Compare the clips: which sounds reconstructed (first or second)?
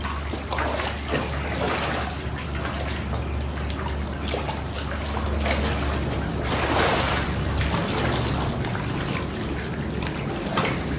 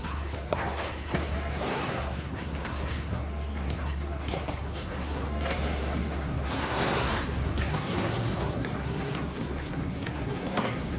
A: second